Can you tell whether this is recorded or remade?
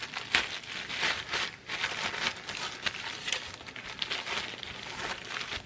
recorded